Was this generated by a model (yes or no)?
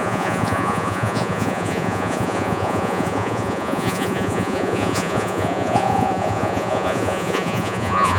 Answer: yes